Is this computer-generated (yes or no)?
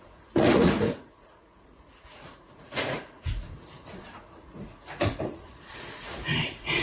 yes